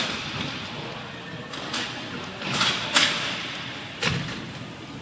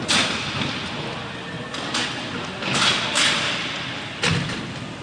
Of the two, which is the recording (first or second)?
second